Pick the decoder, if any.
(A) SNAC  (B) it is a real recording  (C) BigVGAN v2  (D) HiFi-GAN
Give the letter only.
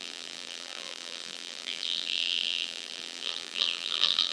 C